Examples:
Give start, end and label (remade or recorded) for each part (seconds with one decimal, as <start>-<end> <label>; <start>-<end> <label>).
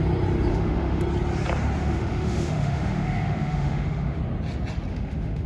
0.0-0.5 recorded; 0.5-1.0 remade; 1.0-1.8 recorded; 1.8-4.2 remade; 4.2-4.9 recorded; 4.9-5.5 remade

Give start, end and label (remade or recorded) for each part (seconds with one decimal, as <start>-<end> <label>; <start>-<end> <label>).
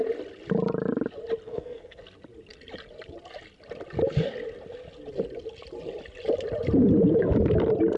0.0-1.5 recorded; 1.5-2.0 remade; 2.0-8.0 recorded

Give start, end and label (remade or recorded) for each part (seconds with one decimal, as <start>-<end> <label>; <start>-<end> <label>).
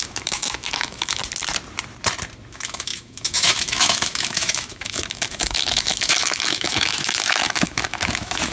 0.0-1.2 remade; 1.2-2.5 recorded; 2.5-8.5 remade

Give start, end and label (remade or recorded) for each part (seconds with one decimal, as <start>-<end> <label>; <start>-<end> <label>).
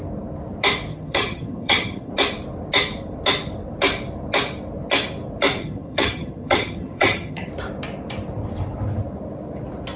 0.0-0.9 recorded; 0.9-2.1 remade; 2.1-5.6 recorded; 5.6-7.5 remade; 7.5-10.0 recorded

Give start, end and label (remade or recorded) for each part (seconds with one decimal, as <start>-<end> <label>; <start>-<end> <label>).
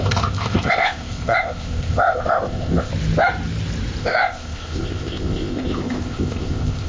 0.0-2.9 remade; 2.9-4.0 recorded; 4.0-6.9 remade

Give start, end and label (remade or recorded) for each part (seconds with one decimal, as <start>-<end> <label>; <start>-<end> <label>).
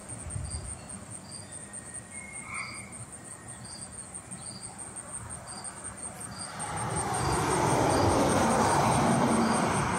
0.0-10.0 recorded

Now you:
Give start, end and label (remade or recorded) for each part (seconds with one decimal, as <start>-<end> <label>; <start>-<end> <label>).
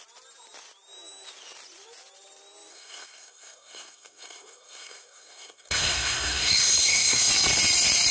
0.0-2.7 recorded; 2.7-7.3 remade; 7.3-8.1 recorded